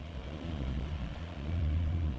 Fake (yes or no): yes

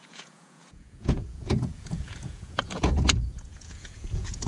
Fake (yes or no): yes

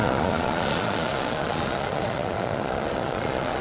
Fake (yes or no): yes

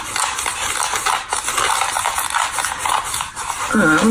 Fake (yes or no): no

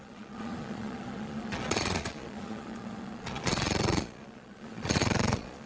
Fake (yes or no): yes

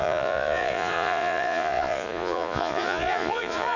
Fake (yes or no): yes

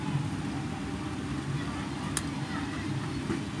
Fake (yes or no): no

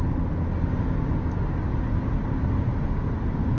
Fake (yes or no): no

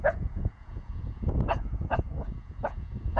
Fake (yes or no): yes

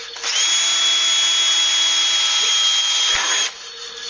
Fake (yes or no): no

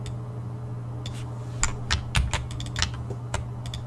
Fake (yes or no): no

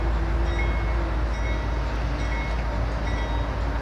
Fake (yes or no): no